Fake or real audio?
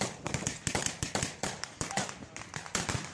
real